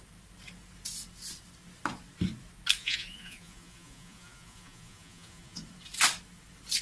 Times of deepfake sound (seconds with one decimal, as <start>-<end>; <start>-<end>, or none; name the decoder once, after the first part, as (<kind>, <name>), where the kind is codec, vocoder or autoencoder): 2.8-5.6 (vocoder, Vocos)